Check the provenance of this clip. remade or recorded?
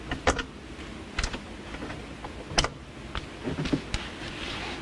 recorded